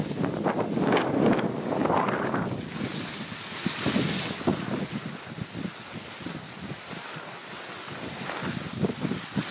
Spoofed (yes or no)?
no